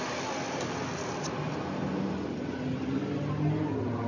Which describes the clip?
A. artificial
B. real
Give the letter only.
B